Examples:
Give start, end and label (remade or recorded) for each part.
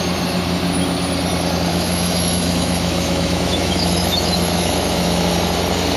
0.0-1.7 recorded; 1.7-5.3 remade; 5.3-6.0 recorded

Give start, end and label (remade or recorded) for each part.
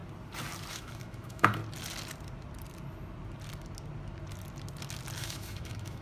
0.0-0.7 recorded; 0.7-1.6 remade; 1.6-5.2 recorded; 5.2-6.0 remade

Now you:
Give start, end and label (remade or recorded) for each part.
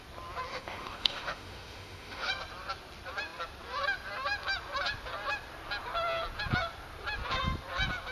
0.0-0.5 recorded; 0.5-2.3 remade; 2.3-8.1 recorded